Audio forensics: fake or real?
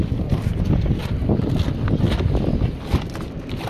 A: real